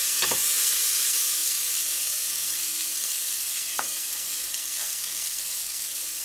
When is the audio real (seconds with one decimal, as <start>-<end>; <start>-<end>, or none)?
none